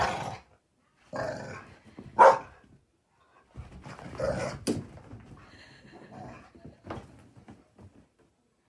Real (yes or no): yes